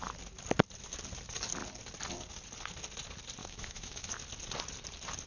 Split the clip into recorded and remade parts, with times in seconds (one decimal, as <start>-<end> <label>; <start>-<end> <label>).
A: 0.0-3.4 recorded; 3.4-4.1 remade; 4.1-5.3 recorded